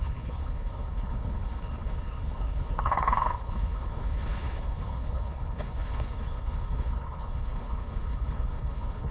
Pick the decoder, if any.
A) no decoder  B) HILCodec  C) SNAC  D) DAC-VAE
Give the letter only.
B